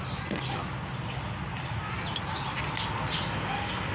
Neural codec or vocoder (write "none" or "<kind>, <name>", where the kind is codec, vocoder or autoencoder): none